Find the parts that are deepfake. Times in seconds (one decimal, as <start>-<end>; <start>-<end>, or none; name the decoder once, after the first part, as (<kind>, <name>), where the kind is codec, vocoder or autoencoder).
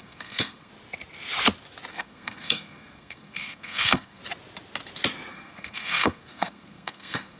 0.0-0.7 (codec, SNAC); 1.9-4.2; 5.3-7.4